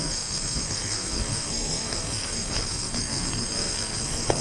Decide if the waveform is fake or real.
fake